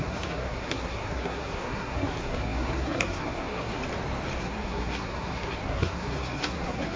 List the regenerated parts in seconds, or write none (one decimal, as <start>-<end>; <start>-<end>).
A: 0.0-3.8; 4.4-7.0